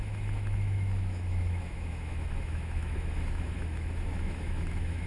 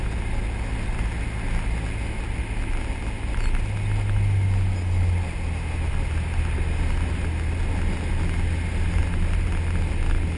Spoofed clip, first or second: first